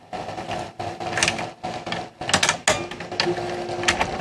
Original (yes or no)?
yes